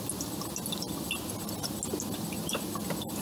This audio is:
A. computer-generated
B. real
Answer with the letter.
B